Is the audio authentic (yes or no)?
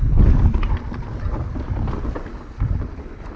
yes